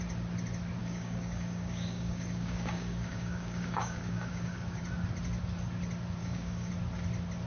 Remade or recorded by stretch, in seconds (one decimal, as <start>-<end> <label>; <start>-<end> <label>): 0.0-0.8 recorded; 0.8-4.8 remade; 4.8-6.2 recorded; 6.2-6.7 remade; 6.7-7.5 recorded